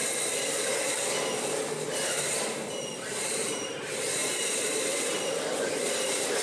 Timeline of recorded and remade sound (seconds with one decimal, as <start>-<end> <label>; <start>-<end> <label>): 0.0-3.2 recorded; 3.2-6.4 remade